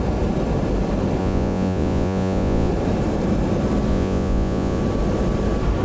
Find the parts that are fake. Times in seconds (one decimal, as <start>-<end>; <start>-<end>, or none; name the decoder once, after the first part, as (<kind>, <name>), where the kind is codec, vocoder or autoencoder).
1.2-2.7 (vocoder, Vocos); 3.9-4.8